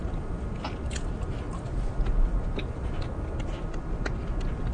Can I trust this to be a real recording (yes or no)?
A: yes